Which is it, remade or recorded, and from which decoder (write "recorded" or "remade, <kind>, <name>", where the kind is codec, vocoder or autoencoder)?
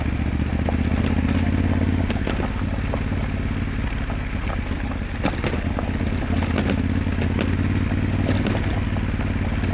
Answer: recorded